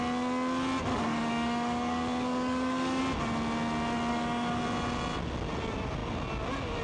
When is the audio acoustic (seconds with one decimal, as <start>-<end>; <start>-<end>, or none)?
0.0-0.9; 3.0-4.1; 4.6-6.8